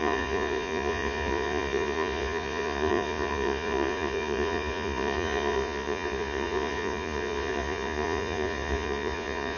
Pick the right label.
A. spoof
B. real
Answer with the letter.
A